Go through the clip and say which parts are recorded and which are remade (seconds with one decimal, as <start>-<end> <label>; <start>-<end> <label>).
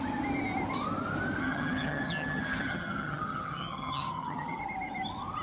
0.0-1.4 recorded; 1.4-4.6 remade; 4.6-5.4 recorded